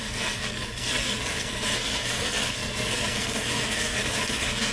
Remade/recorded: remade